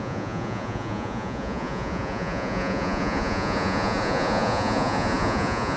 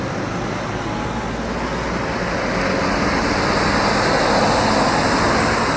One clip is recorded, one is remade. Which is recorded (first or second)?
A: second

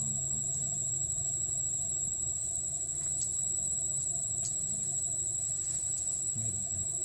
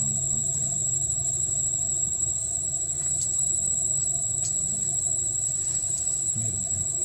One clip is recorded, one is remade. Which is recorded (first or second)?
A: first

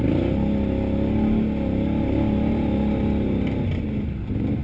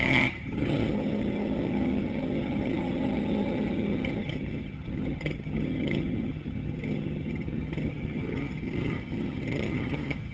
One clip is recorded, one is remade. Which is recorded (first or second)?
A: first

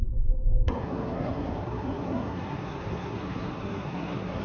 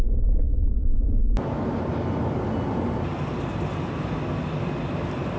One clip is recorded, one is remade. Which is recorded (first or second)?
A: second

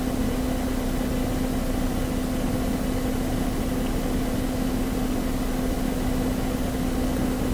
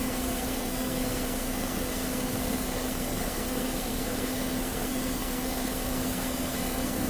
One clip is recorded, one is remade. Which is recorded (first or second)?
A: first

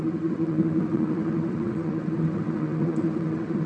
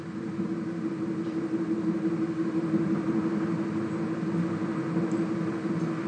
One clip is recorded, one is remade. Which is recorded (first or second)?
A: second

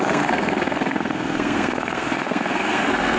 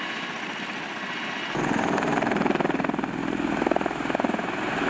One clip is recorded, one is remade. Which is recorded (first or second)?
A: second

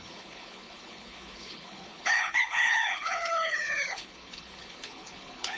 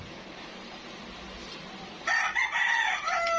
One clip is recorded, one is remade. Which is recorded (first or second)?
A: second